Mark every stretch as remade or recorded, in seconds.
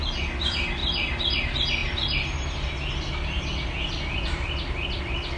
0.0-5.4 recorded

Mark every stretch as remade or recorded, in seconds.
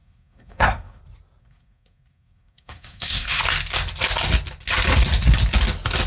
0.0-1.0 remade; 1.0-1.4 recorded; 1.4-3.4 remade; 3.4-6.1 recorded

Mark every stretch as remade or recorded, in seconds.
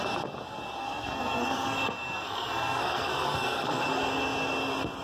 0.0-0.8 recorded; 0.8-3.8 remade; 3.8-5.0 recorded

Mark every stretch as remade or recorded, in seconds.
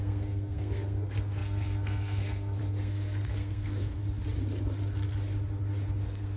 0.0-4.0 remade; 4.0-6.0 recorded; 6.0-6.4 remade